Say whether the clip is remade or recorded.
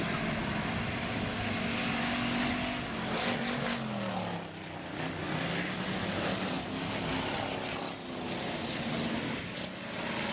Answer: recorded